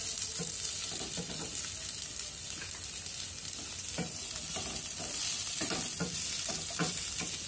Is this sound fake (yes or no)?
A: no